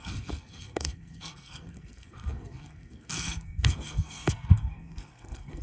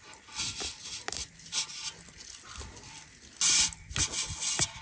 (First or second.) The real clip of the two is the second